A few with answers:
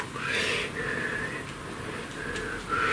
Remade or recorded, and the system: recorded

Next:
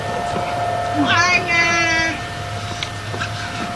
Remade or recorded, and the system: recorded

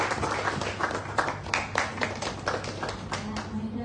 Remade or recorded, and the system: recorded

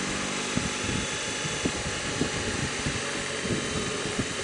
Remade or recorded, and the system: recorded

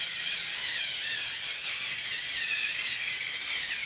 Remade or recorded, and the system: remade, vocoder, BigVGAN v2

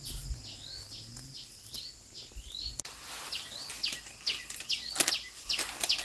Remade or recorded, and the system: recorded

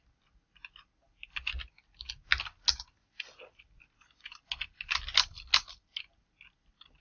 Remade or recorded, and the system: recorded